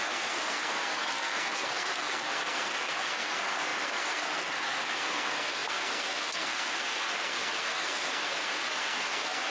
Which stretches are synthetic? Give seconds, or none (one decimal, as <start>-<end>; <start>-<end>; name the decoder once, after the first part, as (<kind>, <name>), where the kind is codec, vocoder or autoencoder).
0.0-9.5 (codec, SNAC)